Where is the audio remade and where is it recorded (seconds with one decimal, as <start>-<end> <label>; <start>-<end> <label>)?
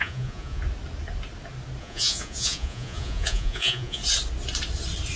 0.0-0.6 remade; 0.6-1.8 recorded; 1.8-4.0 remade; 4.0-5.2 recorded